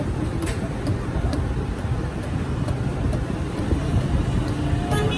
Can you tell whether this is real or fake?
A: real